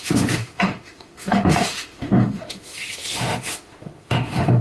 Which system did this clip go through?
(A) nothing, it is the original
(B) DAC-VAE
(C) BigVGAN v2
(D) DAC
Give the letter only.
B